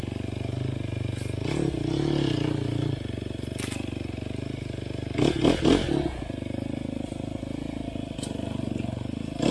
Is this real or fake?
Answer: real